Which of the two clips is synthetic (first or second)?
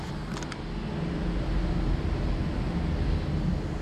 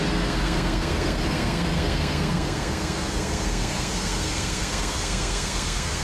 second